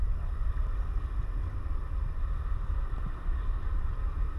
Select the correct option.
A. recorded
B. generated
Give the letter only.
A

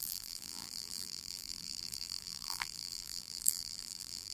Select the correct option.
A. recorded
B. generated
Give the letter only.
B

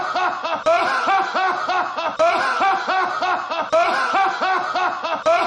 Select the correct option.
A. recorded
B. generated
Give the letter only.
A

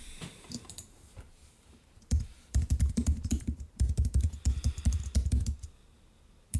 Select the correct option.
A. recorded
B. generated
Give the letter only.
B